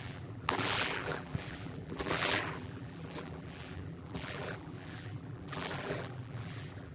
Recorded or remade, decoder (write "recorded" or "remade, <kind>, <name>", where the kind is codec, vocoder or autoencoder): remade, vocoder, BigVGAN v2